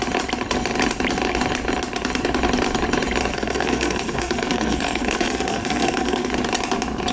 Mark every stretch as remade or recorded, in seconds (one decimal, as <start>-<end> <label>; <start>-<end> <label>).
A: 0.0-3.3 recorded; 3.3-6.3 remade; 6.3-7.1 recorded